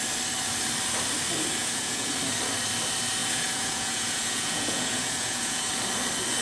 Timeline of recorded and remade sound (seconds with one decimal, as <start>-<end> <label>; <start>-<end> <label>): 0.0-1.6 recorded; 1.6-2.1 remade; 2.1-3.2 recorded; 3.2-5.7 remade; 5.7-6.4 recorded